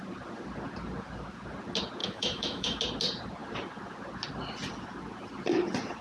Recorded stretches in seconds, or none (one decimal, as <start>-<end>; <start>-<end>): 0.0-2.0; 2.8-6.0